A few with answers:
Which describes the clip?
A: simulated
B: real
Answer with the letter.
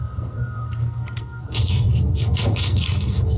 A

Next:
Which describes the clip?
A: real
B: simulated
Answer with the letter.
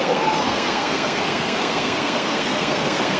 B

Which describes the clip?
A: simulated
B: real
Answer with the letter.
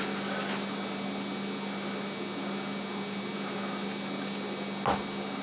B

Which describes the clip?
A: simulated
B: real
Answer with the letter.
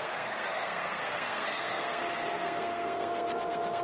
A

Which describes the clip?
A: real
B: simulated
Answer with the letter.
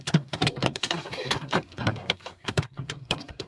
B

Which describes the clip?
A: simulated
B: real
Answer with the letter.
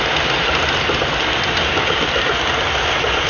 B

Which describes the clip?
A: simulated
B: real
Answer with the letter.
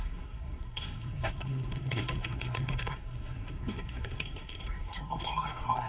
A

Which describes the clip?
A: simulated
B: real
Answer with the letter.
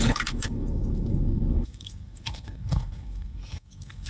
A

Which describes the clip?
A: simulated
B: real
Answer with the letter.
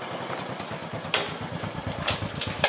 B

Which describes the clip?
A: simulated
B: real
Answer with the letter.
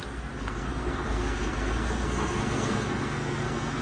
A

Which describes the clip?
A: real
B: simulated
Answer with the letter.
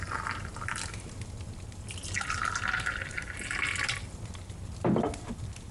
A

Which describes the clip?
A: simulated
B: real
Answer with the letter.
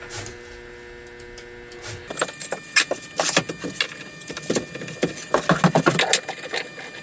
B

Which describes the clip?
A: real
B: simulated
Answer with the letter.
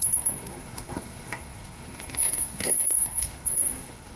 B